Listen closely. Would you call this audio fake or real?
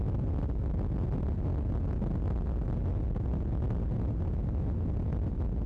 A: real